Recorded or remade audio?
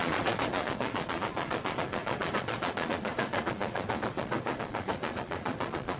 remade